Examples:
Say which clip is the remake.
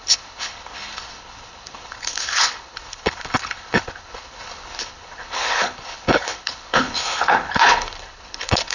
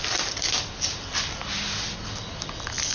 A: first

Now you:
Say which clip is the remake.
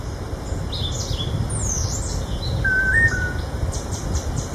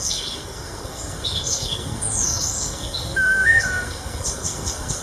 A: second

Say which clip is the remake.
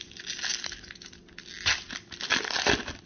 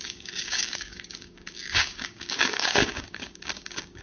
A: second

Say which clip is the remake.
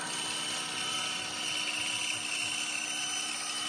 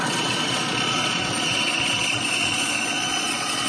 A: second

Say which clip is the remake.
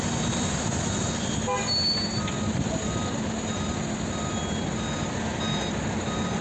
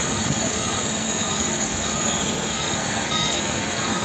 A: second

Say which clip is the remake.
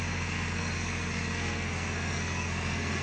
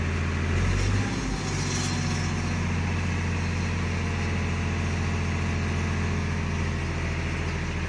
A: first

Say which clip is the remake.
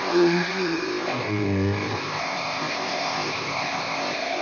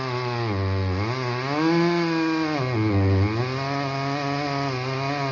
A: first